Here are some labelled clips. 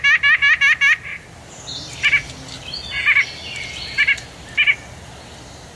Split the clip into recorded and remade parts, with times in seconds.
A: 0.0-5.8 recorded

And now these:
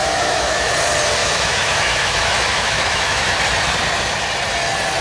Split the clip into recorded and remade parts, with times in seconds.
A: 0.0-0.7 remade; 0.7-1.2 recorded; 1.2-3.4 remade; 3.4-5.0 recorded

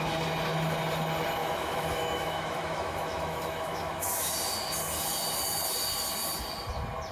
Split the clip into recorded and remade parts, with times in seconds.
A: 0.0-1.4 recorded; 1.4-4.3 remade; 4.3-7.1 recorded